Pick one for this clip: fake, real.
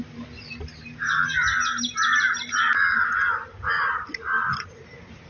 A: real